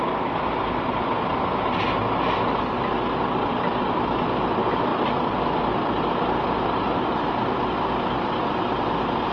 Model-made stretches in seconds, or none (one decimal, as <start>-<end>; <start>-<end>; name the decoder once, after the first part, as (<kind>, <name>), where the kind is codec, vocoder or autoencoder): none